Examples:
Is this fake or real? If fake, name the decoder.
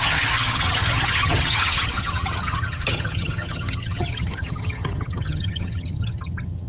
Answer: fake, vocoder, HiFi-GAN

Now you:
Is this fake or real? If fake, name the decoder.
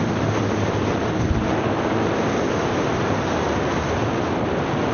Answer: real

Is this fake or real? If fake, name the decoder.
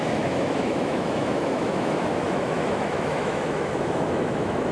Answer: fake, autoencoder, DAC-VAE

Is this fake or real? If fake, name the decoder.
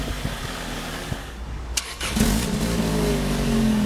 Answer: fake, codec, DAC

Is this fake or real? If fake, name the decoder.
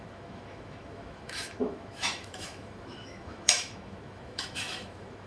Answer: fake, autoencoder, DAC-VAE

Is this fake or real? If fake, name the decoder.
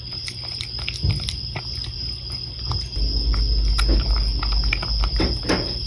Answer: real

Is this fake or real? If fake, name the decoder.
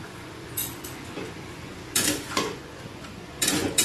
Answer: fake, vocoder, Vocos